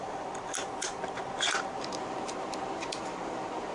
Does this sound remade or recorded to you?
remade